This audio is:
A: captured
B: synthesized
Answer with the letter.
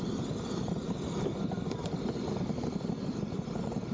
A